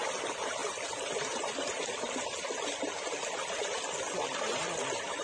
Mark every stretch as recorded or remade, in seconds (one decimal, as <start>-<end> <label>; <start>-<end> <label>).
0.0-5.2 recorded